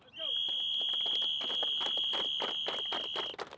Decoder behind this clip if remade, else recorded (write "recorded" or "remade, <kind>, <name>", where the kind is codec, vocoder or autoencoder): recorded